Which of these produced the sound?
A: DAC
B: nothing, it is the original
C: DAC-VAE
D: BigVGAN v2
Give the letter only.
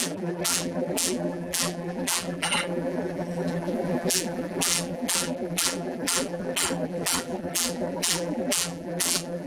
D